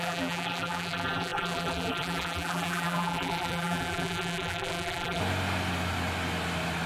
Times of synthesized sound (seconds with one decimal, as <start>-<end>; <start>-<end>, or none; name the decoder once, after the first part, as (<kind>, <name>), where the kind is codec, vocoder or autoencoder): 0.0-5.2 (vocoder, BigVGAN v2)